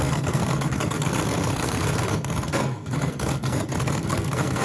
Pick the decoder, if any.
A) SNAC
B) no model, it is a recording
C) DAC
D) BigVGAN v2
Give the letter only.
A